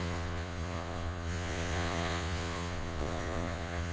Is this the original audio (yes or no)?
no